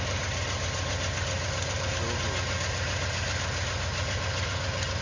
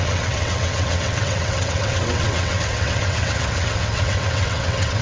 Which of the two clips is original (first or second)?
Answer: first